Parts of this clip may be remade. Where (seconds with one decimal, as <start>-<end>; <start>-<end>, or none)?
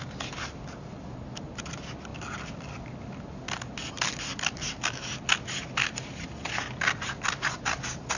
none